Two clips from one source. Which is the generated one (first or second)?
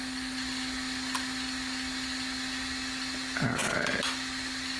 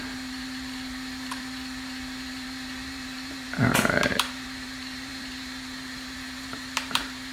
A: second